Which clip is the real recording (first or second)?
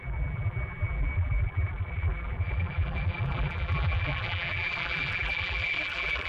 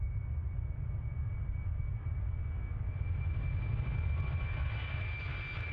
second